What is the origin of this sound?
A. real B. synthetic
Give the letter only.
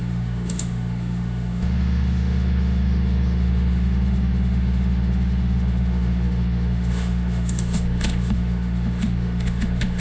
B